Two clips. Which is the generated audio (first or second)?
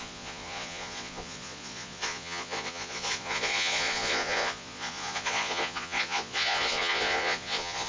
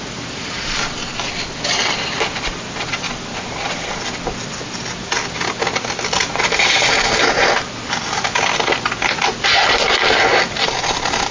first